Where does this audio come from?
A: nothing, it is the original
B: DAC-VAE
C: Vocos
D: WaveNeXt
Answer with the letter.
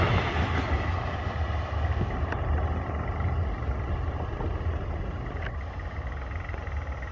A